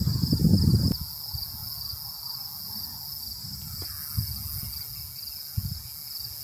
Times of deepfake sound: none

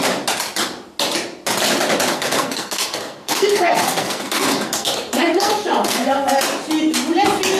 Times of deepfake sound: 2.1-6.3 (codec, SNAC)

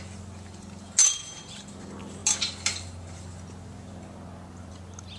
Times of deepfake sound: none